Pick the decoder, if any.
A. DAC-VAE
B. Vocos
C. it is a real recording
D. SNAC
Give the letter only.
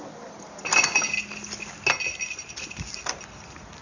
C